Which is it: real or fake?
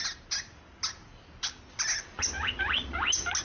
real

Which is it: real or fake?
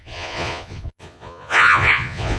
fake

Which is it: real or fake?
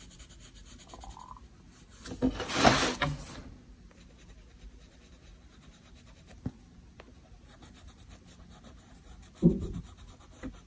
real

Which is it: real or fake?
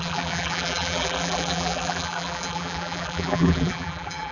fake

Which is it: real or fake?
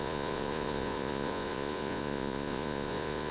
fake